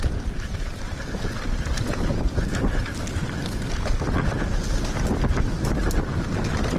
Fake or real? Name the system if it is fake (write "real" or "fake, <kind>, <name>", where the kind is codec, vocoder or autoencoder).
real